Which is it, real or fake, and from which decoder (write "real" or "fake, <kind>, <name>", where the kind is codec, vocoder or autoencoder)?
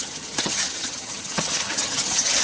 fake, vocoder, HiFi-GAN